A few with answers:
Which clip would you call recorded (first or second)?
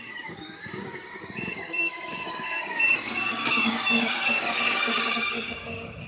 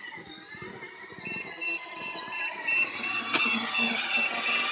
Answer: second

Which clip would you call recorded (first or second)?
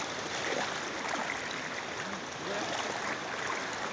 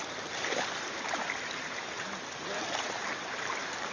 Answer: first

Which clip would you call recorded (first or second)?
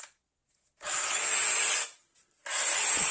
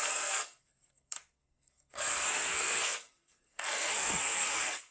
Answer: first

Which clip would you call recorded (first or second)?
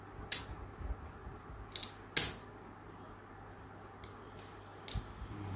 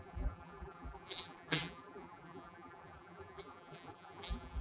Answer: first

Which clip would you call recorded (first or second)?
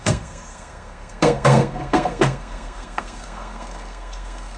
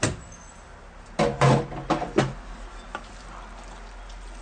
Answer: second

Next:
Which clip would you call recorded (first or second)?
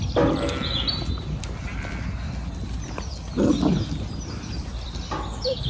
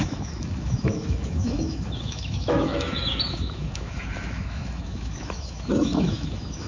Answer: first